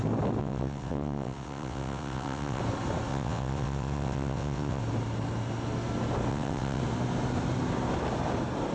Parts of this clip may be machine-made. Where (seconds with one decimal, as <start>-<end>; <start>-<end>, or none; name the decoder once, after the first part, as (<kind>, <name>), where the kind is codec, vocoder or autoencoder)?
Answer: 0.4-2.6 (vocoder, WaveNeXt); 3.1-4.8; 6.3-6.8